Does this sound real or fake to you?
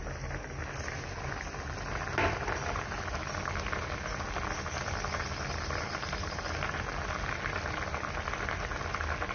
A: real